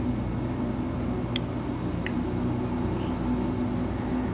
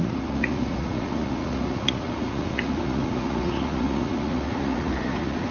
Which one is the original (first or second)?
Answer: first